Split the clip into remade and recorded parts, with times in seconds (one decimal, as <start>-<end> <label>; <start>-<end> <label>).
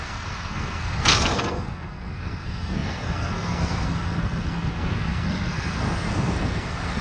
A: 0.0-7.0 remade